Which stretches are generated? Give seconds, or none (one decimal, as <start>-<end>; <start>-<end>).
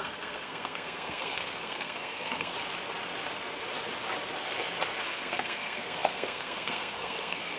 0.0-2.5; 5.0-7.6